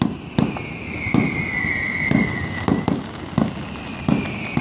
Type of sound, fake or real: real